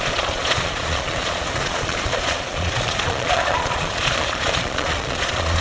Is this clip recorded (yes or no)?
no